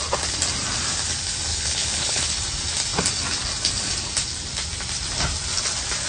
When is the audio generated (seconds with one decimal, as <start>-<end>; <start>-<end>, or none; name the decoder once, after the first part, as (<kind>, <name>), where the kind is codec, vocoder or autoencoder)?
1.5-2.2 (codec, HILCodec)